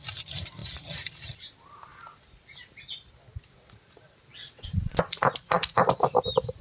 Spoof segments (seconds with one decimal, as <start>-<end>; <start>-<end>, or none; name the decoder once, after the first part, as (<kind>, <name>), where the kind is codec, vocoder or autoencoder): 4.3-4.9 (vocoder, WaveNeXt)